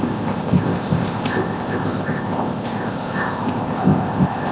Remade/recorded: remade